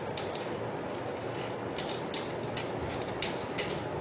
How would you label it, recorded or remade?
recorded